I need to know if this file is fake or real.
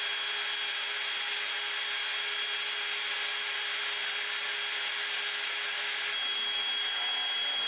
real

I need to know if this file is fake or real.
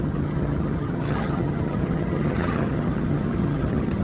fake